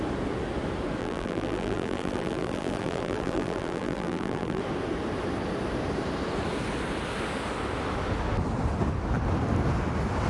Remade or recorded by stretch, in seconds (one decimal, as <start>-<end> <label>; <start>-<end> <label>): 0.0-1.0 recorded; 1.0-4.6 remade; 4.6-10.3 recorded